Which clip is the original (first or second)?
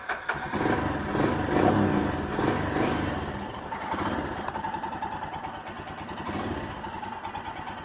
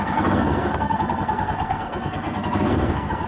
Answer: first